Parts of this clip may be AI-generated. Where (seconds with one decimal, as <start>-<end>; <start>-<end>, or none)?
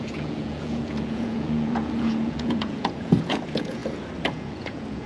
0.0-3.8; 4.3-5.1